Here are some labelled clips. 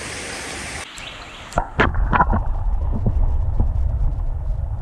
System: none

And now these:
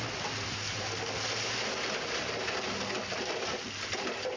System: none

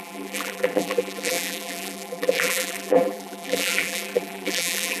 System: vocoder, BigVGAN v2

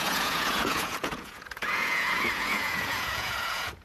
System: vocoder, Vocos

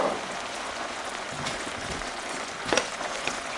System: vocoder, Vocos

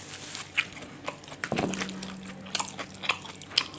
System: none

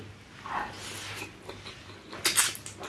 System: none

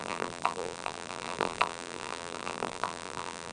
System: vocoder, BigVGAN v2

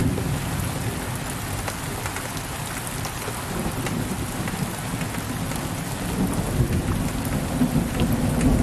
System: none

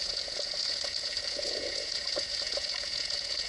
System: vocoder, Vocos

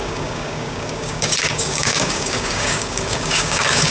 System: codec, DAC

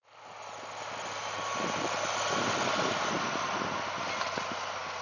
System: none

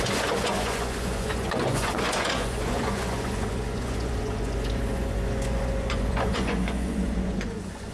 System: vocoder, Vocos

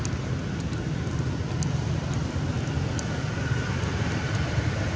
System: none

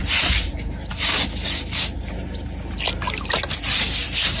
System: none